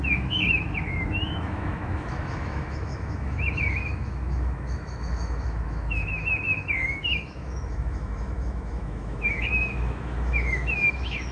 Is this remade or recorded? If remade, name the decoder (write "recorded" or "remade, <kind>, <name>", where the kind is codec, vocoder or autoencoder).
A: remade, autoencoder, DAC-VAE